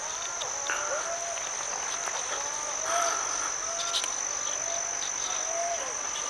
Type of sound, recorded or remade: recorded